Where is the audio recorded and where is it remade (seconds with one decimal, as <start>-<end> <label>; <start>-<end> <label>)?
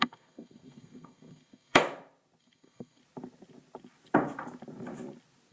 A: 0.0-1.8 remade; 1.8-2.4 recorded; 2.4-3.0 remade; 3.0-5.5 recorded